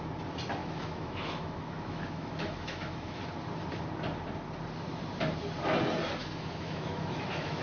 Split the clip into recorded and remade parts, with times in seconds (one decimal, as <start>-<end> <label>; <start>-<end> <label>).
0.0-0.6 recorded; 0.6-3.2 remade; 3.2-6.2 recorded; 6.2-7.6 remade